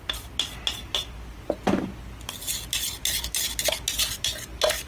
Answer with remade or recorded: recorded